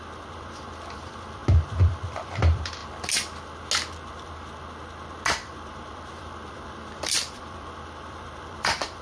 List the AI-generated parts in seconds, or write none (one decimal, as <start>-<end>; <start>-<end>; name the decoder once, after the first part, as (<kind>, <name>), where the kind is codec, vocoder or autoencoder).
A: 0.0-2.8 (vocoder, BigVGAN v2); 5.4-9.0